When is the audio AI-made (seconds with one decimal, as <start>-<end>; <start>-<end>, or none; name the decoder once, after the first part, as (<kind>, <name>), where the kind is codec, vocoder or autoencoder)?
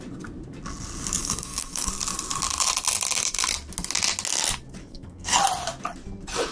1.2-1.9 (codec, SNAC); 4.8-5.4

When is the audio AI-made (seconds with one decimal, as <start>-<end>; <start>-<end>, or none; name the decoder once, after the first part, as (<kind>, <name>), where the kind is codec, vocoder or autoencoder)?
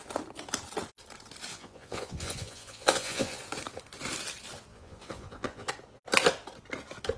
1.5-3.4 (vocoder, Vocos); 4.7-5.7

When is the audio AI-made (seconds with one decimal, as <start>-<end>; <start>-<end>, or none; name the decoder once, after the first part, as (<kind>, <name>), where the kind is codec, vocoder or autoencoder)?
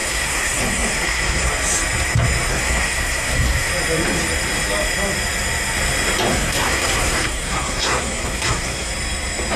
0.0-1.5 (codec, SNAC); 2.5-3.7; 6.3-8.9